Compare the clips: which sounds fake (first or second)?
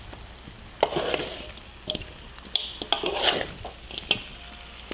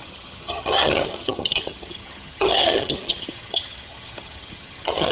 second